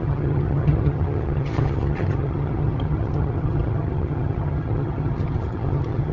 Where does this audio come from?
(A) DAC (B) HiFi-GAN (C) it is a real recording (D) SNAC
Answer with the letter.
B